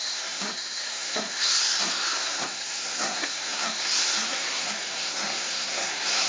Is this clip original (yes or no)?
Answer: no